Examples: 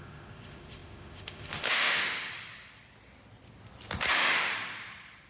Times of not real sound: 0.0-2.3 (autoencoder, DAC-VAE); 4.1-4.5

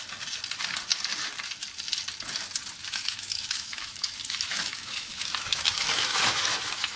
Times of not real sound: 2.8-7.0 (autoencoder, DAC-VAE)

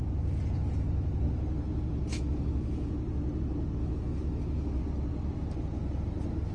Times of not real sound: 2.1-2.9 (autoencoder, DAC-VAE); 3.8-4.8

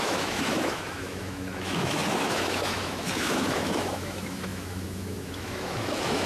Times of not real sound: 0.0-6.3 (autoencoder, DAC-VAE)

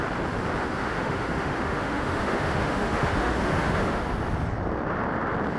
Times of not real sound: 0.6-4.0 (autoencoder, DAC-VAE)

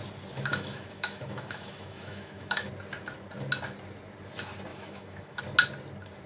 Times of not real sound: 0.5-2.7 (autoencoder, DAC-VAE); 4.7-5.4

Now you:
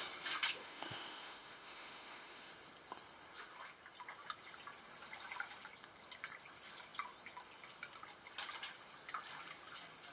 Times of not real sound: 0.6-2.5 (autoencoder, DAC-VAE)

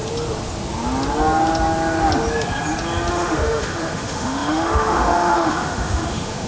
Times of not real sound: 3.1-6.5 (autoencoder, DAC-VAE)